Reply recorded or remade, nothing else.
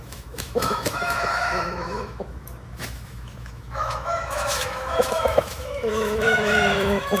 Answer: remade